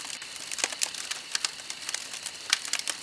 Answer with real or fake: real